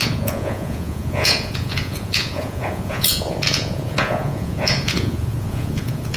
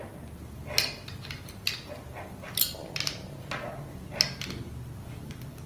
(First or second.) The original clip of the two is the second